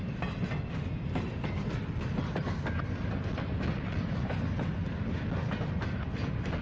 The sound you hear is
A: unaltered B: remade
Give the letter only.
A